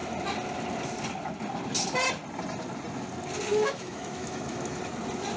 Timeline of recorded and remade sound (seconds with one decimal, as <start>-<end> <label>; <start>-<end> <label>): 0.0-3.5 recorded; 3.5-4.8 remade; 4.8-5.4 recorded